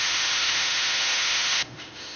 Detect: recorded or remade remade